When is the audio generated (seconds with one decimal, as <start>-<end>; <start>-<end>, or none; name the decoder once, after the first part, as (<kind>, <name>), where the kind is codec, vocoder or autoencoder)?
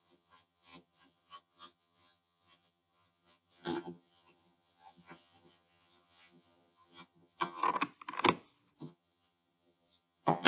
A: 0.0-7.6 (vocoder, HiFi-GAN); 8.8-10.5